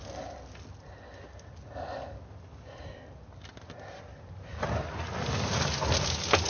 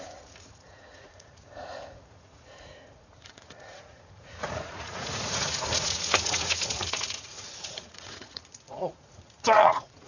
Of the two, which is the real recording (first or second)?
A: first